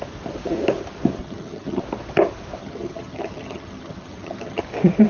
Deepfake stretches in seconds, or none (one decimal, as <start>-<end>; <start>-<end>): 1.2-1.8; 2.6-4.6